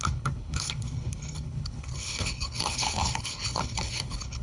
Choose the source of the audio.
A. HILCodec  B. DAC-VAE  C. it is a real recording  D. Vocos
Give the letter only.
A